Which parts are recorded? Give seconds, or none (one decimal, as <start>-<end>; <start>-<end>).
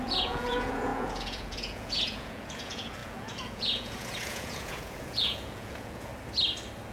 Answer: 6.1-6.9